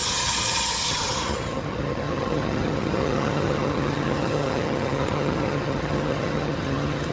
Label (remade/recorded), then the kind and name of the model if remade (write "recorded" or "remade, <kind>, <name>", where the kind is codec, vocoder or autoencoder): remade, vocoder, HiFi-GAN